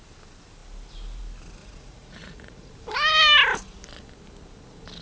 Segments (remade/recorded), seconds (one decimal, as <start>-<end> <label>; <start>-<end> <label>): 0.0-1.6 recorded; 1.6-2.7 remade; 2.7-5.0 recorded